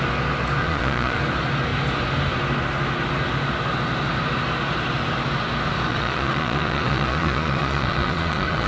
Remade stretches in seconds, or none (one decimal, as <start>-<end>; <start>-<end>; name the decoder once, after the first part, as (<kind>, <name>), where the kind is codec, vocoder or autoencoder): 0.6-1.2 (vocoder, Vocos); 5.9-8.7